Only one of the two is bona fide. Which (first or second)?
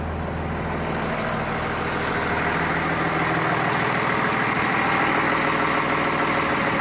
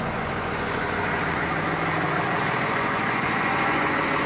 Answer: first